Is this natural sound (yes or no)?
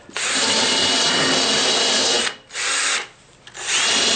yes